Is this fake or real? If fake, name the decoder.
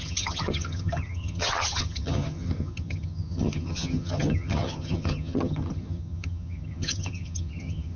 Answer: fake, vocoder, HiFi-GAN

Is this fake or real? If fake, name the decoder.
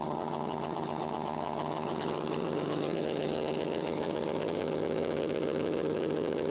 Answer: fake, vocoder, HiFi-GAN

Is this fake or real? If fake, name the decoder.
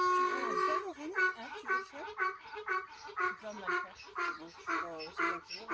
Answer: real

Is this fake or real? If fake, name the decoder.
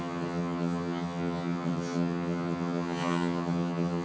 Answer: fake, vocoder, HiFi-GAN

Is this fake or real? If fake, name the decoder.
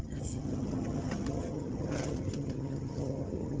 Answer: fake, vocoder, HiFi-GAN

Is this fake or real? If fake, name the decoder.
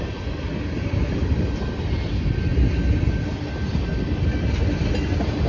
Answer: real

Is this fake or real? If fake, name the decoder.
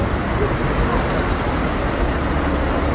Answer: real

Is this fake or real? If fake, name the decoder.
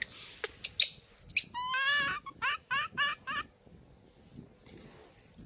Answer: real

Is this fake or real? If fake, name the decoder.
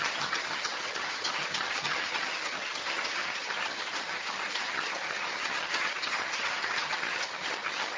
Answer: fake, vocoder, HiFi-GAN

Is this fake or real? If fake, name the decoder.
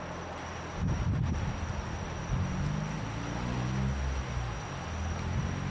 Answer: real